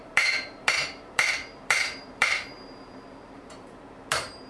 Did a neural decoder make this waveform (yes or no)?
yes